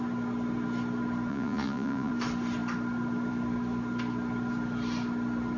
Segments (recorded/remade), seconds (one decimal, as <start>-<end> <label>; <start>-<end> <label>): 0.0-1.3 recorded; 1.3-2.1 remade; 2.1-5.6 recorded